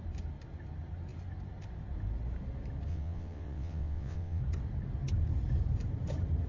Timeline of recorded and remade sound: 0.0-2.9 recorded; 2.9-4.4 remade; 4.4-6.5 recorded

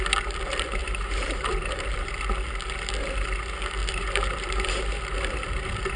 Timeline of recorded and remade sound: 0.0-0.8 recorded; 0.8-2.1 remade; 2.1-3.8 recorded; 3.8-5.0 remade; 5.0-6.0 recorded

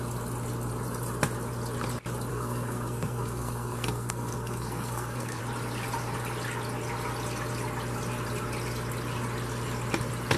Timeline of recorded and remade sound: 0.0-2.3 recorded; 2.3-5.4 remade; 5.4-10.4 recorded

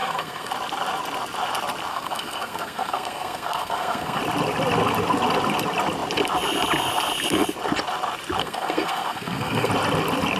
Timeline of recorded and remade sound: 0.0-0.5 remade; 0.5-1.9 recorded; 1.9-4.2 remade; 4.2-8.4 recorded; 8.4-9.7 remade; 9.7-10.4 recorded

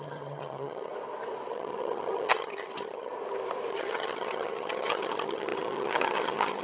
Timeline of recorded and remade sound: 0.0-0.9 remade; 0.9-1.5 recorded; 1.5-3.1 remade; 3.1-3.7 recorded; 3.7-6.6 remade